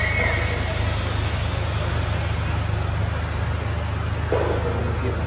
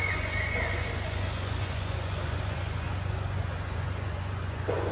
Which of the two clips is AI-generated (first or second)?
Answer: second